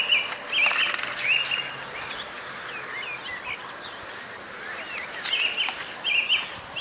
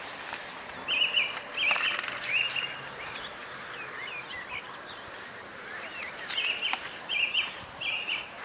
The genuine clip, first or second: first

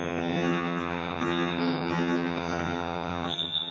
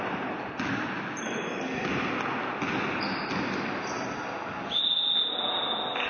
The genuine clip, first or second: second